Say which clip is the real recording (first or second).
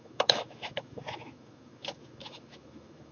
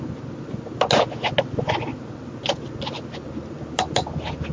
second